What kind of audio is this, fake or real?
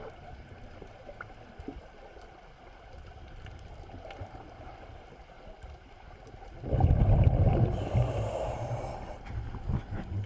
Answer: real